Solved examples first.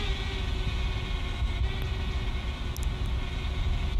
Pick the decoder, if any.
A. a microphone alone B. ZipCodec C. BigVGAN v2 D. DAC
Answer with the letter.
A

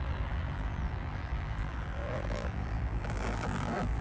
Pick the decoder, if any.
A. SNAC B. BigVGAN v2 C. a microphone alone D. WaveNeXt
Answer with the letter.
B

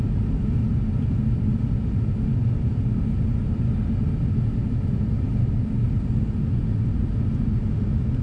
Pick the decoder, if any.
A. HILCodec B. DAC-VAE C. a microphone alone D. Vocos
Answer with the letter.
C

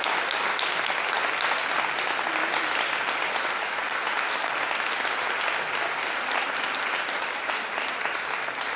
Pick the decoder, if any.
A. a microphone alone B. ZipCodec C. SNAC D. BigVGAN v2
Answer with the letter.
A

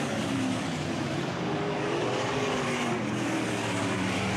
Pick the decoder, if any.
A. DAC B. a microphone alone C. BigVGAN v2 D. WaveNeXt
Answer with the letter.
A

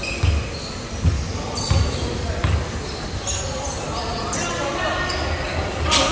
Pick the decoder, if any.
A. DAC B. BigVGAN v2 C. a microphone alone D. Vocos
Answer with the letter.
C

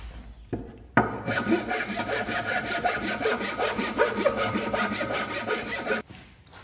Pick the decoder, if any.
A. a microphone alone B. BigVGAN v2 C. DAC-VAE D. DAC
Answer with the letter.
B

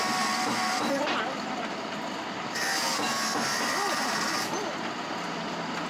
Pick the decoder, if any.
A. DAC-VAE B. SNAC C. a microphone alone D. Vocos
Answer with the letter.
C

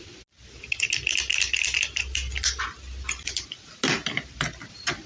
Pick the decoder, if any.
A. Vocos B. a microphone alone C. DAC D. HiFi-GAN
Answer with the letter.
B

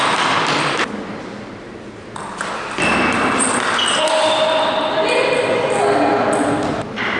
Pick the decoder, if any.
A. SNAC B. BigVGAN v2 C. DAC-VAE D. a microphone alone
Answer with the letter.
D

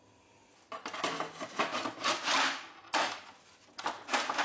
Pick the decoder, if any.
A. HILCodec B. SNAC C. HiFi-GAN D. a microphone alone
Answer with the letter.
D